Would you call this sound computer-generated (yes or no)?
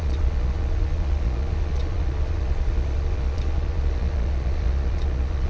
yes